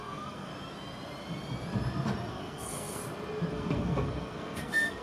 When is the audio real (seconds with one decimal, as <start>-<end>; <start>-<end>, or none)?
0.5-2.3; 3.0-3.5